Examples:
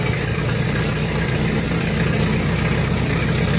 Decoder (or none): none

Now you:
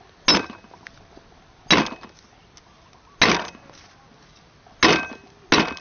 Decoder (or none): none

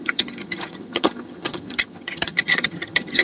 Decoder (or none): vocoder, HiFi-GAN